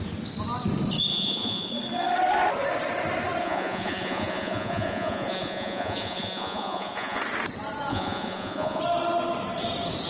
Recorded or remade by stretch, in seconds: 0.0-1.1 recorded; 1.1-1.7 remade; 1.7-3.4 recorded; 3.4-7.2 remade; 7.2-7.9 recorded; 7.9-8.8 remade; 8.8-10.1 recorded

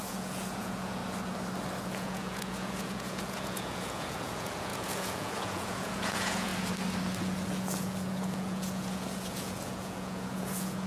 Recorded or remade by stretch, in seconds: 0.0-1.0 remade; 1.0-1.8 recorded; 1.8-6.5 remade; 6.5-7.2 recorded; 7.2-10.9 remade

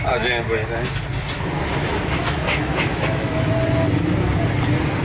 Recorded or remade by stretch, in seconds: 0.0-1.8 recorded; 1.8-3.5 remade; 3.5-5.0 recorded

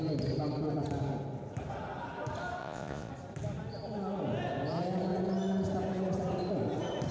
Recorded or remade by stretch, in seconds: 0.0-2.6 recorded; 2.6-3.1 remade; 3.1-7.1 recorded

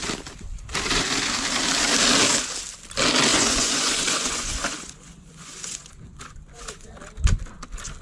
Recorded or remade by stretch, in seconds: 0.0-3.3 recorded; 3.3-6.9 remade; 6.9-8.0 recorded